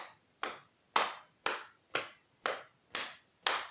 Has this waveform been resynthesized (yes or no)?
no